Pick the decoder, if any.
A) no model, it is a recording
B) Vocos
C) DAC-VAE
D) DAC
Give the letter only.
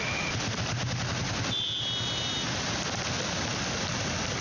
A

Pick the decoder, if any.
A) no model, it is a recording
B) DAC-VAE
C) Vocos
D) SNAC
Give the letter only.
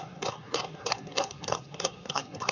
D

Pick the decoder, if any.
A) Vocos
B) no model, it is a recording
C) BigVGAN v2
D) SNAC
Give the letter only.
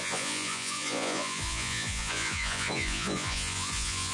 A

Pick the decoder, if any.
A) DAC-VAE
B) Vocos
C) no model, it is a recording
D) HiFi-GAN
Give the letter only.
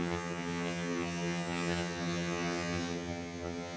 D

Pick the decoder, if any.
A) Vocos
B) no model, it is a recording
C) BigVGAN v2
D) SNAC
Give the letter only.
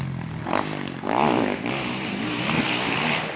B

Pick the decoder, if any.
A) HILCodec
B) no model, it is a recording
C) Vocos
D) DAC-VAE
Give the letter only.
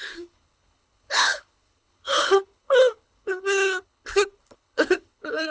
A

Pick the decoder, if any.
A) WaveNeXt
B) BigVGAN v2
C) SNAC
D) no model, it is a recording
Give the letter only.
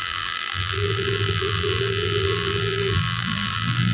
B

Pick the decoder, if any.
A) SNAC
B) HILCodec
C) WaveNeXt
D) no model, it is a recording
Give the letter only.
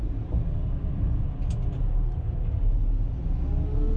D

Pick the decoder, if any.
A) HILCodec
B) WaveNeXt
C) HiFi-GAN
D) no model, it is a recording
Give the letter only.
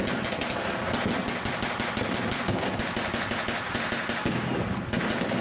D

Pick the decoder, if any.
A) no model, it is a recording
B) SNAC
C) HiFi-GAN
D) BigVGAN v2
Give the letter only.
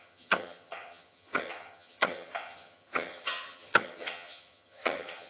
C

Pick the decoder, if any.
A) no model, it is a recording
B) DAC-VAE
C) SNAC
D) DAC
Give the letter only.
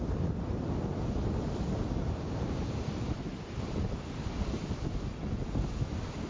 A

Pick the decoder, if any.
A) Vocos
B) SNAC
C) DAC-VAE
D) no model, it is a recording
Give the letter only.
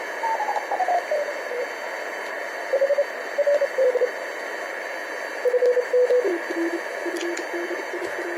D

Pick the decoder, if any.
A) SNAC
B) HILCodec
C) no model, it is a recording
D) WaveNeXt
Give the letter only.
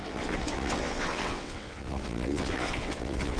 D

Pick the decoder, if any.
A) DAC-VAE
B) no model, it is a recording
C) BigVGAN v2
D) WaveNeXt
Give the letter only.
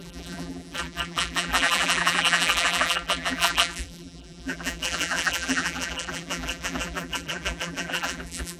C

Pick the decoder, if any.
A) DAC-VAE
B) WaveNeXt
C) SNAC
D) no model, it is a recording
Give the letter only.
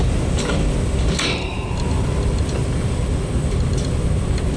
D